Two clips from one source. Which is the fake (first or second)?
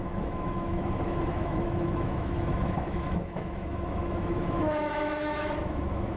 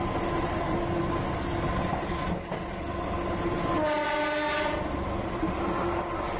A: first